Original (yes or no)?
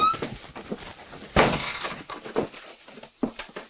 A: yes